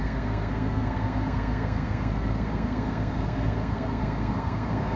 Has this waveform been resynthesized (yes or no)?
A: yes